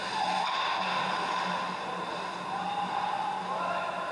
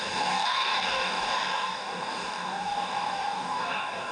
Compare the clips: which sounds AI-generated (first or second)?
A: second